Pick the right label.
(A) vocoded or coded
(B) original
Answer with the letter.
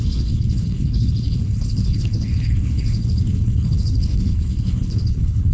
A